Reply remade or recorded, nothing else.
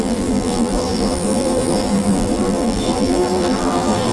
remade